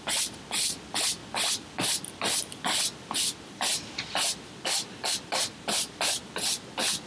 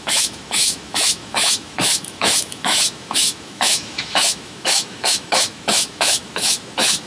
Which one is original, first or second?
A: first